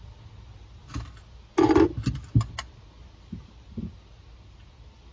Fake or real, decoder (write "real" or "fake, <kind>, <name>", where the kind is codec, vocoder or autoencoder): real